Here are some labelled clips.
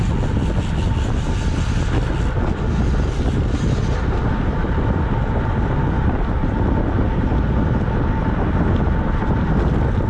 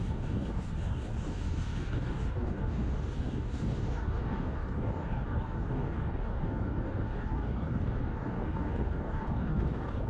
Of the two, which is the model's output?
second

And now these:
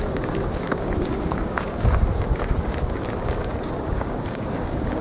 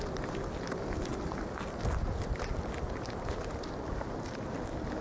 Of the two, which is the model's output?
first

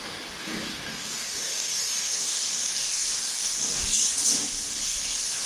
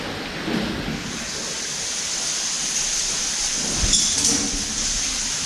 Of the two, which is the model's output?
first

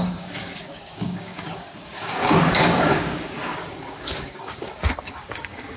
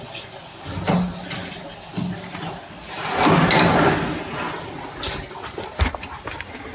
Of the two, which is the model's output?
first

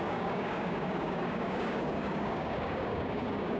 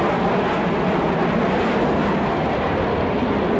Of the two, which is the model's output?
first